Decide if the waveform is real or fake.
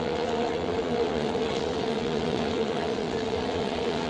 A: fake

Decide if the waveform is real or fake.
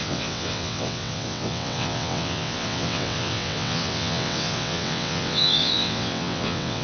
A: fake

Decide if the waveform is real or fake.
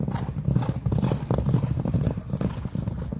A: real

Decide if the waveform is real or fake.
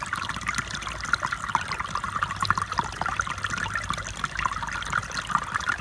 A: real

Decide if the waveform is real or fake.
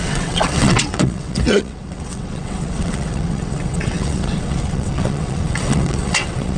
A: fake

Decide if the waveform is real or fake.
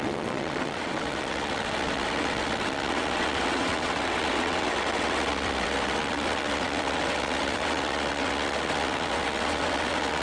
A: fake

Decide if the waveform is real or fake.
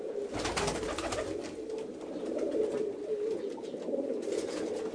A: real